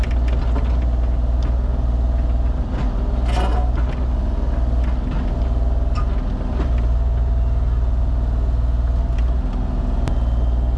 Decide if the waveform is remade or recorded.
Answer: recorded